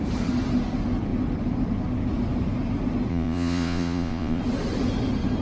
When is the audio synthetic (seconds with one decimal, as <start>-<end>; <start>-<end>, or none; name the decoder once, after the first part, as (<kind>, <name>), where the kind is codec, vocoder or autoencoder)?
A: 3.1-4.4 (vocoder, Vocos)